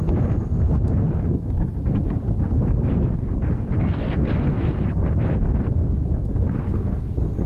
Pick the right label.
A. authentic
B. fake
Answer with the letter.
B